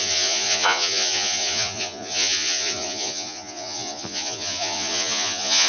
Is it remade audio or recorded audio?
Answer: remade